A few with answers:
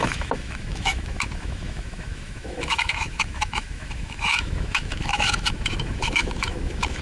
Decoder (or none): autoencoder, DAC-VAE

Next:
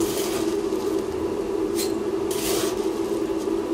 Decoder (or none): none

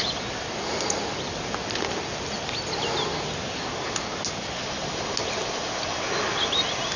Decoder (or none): none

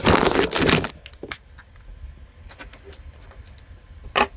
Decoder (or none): none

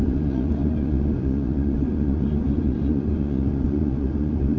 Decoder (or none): vocoder, Vocos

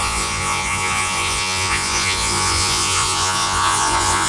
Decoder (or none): vocoder, Vocos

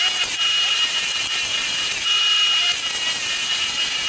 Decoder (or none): vocoder, BigVGAN v2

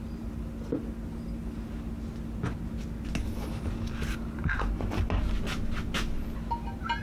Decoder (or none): none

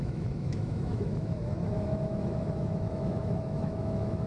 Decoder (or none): autoencoder, DAC-VAE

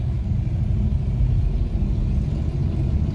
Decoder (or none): none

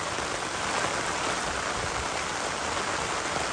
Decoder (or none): none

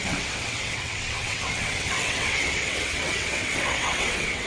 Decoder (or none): vocoder, WaveNeXt